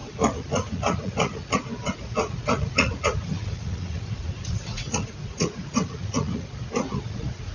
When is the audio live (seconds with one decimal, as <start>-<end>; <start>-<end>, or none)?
none